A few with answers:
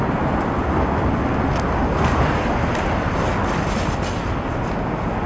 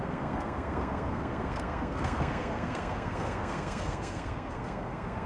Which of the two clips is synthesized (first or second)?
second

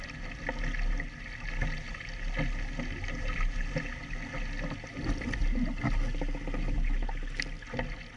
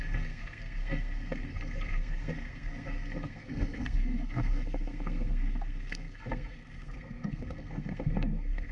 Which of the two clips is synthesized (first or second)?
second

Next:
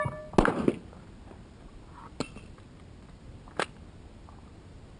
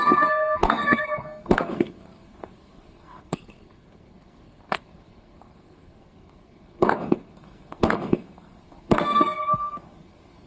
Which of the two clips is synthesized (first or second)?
second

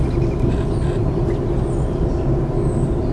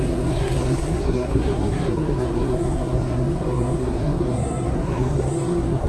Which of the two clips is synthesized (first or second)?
second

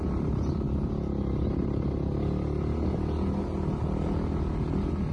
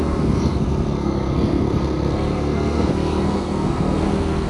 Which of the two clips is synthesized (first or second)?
second